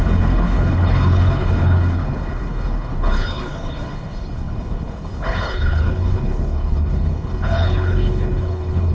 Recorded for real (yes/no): no